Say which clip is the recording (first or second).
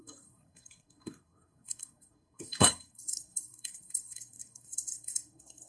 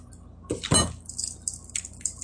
second